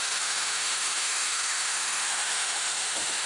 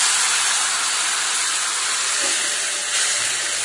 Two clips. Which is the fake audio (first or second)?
first